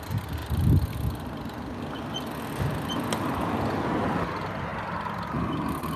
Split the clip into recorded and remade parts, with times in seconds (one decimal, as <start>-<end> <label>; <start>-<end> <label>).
0.0-6.0 recorded